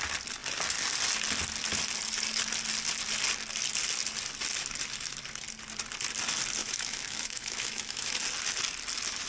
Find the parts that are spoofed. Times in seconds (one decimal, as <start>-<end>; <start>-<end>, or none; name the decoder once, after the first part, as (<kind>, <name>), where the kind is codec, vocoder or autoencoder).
6.6-8.1 (autoencoder, DAC-VAE)